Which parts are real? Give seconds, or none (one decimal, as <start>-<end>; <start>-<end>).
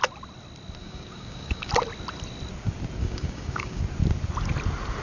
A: 0.0-0.8; 1.7-3.0; 3.8-5.0